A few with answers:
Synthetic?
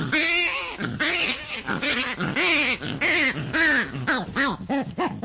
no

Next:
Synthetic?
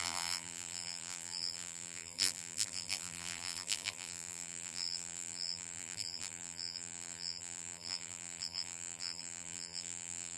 yes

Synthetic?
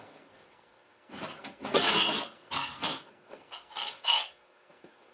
yes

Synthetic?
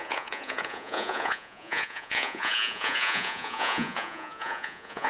yes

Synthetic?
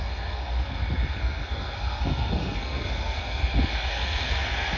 yes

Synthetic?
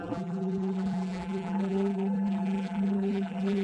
yes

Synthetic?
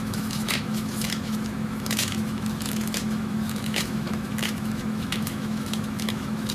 yes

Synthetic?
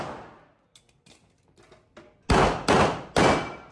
no